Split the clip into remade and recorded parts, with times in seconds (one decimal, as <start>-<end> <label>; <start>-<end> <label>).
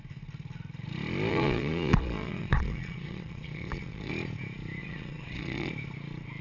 0.0-1.3 recorded; 1.3-4.1 remade; 4.1-4.8 recorded; 4.8-5.7 remade; 5.7-6.4 recorded